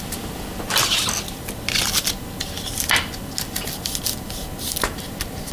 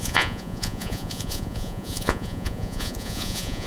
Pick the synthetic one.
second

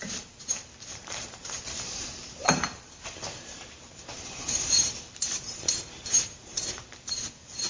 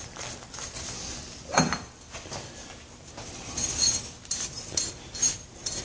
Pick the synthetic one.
first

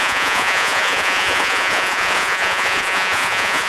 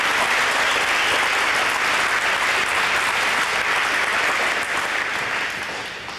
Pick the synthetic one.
first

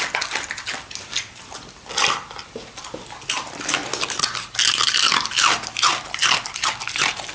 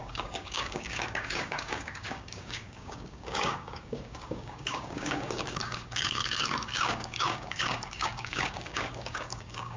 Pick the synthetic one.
second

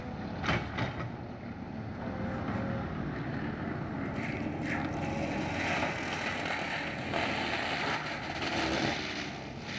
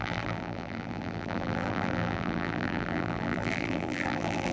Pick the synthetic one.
second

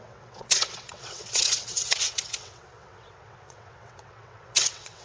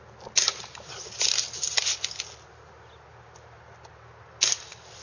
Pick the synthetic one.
first